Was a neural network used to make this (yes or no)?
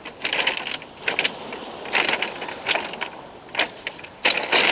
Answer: no